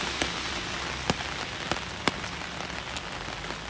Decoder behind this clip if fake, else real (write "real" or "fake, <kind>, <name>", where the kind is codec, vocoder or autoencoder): real